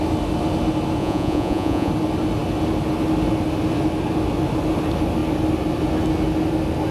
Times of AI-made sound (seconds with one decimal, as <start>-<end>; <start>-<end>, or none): 1.0-1.9